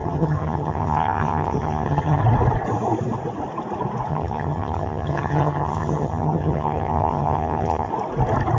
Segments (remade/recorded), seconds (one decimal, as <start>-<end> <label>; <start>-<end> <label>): 0.0-2.2 remade; 2.2-4.1 recorded; 4.1-7.9 remade; 7.9-8.6 recorded